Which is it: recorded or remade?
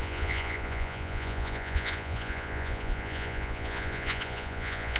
remade